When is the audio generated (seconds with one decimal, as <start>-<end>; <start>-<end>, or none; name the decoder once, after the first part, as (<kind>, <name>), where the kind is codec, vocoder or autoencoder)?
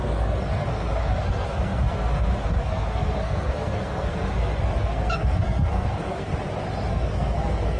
0.0-6.3 (codec, SNAC); 6.9-7.8